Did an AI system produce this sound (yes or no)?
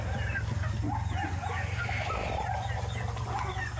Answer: no